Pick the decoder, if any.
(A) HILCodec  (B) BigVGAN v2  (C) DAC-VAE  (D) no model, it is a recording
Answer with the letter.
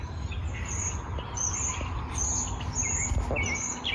D